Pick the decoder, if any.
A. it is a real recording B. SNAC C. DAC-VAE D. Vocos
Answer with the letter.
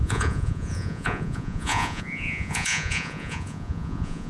D